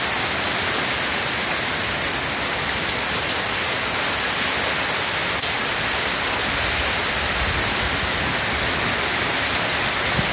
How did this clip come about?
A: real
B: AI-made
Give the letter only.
A